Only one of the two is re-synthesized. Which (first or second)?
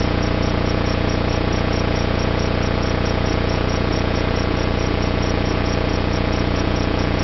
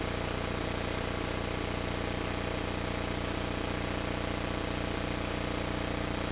first